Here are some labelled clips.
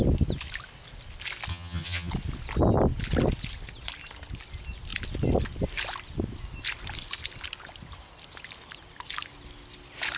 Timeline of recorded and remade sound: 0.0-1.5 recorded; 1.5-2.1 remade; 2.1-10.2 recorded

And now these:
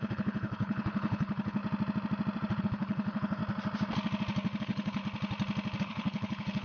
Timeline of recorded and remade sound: 0.0-1.6 remade; 1.6-2.6 recorded; 2.6-3.4 remade; 3.4-4.6 recorded; 4.6-5.0 remade; 5.0-5.8 recorded; 5.8-6.6 remade

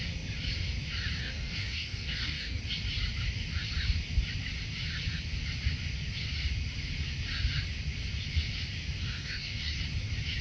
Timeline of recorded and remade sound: 0.0-1.2 recorded; 1.2-2.6 remade; 2.6-9.0 recorded; 9.0-9.8 remade; 9.8-10.4 recorded

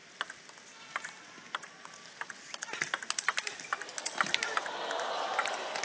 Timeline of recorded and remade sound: 0.0-5.8 recorded

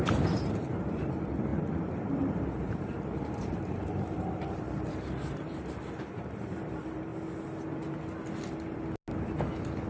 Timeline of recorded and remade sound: 0.0-7.1 remade; 7.1-9.9 recorded

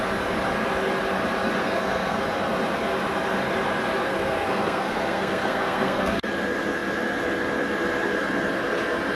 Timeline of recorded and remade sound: 0.0-1.6 recorded; 1.6-2.2 remade; 2.2-4.0 recorded; 4.0-6.3 remade; 6.3-9.1 recorded

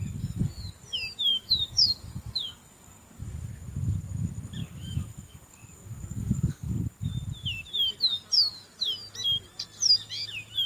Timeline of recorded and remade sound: 0.0-0.7 remade; 0.7-1.3 recorded; 1.3-3.2 remade; 3.2-4.6 recorded; 4.6-7.1 remade; 7.1-10.7 recorded